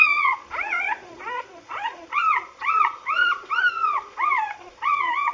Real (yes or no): no